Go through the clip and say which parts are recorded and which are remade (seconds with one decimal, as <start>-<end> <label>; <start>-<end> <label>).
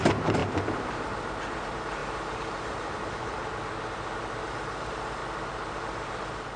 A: 0.0-3.4 remade; 3.4-4.5 recorded; 4.5-5.2 remade; 5.2-5.7 recorded; 5.7-6.6 remade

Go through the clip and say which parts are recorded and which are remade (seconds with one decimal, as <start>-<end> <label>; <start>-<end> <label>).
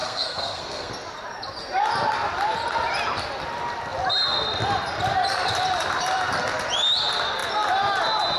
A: 0.0-0.9 remade; 0.9-8.4 recorded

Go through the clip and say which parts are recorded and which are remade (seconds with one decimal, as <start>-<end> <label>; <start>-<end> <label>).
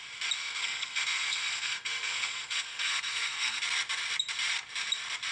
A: 0.0-0.4 recorded; 0.4-3.6 remade; 3.6-5.3 recorded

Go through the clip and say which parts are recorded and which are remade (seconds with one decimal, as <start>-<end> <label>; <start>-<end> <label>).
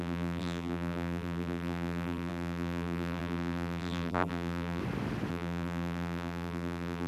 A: 0.0-4.8 remade; 4.8-5.3 recorded; 5.3-7.1 remade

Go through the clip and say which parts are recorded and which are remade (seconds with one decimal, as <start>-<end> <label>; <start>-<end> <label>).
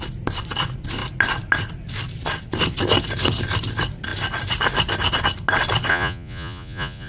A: 0.0-5.9 recorded; 5.9-7.1 remade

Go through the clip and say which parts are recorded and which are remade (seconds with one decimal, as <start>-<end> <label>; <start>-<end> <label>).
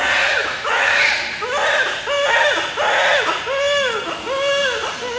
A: 0.0-0.4 recorded; 0.4-0.9 remade; 0.9-5.2 recorded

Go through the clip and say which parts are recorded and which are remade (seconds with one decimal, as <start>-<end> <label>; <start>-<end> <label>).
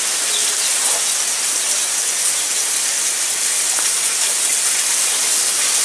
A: 0.0-5.8 recorded